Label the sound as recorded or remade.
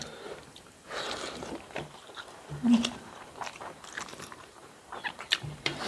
remade